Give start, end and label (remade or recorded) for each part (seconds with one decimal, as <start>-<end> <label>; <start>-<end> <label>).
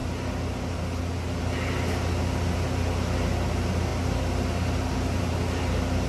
0.0-6.1 recorded